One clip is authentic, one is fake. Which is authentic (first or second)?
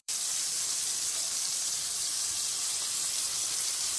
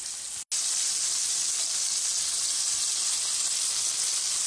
second